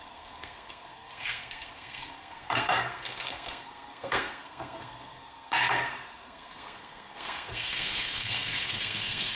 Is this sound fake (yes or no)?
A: yes